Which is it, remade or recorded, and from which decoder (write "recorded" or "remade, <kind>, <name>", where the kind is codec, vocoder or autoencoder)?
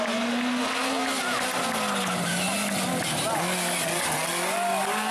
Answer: recorded